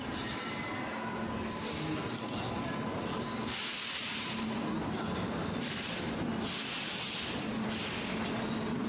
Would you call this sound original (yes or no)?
yes